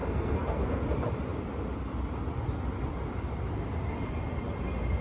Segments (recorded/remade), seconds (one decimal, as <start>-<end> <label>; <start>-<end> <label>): 0.0-0.8 remade; 0.8-5.0 recorded

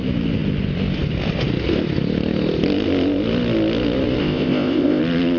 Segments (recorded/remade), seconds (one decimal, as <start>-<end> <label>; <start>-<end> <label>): 0.0-4.2 recorded; 4.2-5.0 remade; 5.0-5.4 recorded

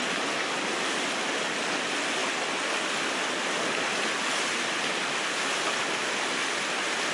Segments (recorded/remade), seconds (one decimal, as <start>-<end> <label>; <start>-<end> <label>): 0.0-7.1 recorded